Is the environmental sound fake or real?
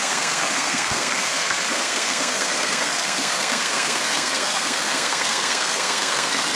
fake